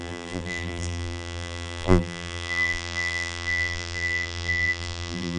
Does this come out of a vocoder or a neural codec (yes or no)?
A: yes